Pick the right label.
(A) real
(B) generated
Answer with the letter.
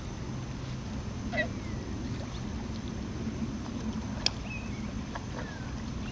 A